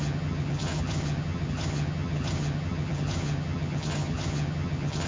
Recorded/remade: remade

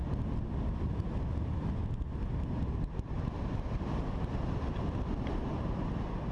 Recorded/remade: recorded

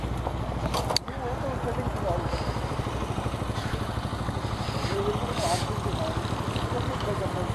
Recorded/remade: recorded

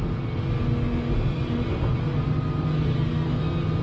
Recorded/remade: recorded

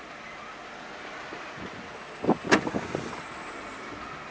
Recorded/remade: recorded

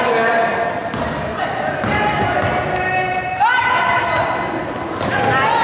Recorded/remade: recorded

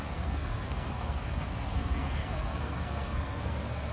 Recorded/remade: remade